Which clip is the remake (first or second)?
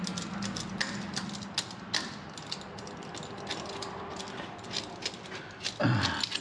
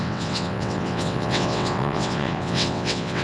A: second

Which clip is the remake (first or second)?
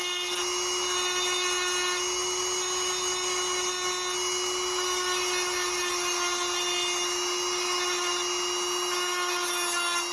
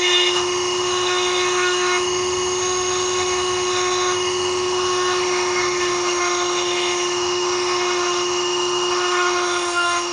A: second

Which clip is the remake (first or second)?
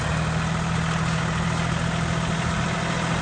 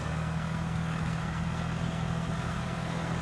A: second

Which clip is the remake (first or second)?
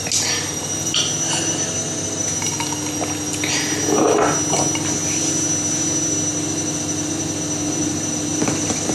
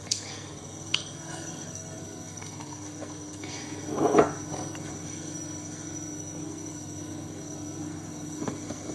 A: second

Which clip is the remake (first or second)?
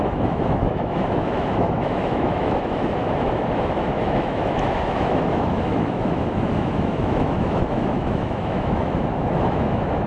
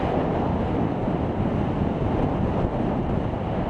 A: first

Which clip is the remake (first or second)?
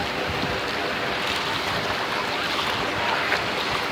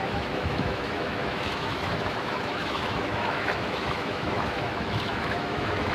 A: second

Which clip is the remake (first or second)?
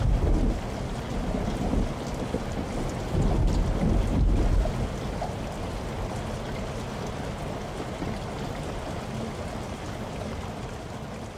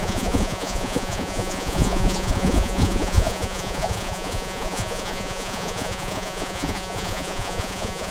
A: second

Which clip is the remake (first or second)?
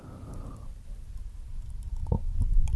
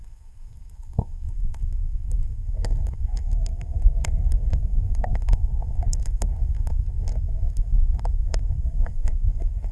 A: second